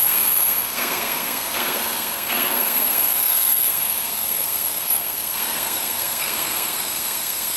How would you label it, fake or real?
fake